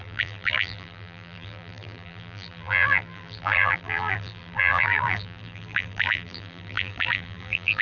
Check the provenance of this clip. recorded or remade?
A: remade